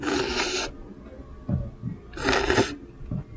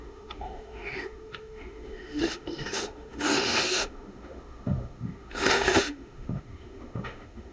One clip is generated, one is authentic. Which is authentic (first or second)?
first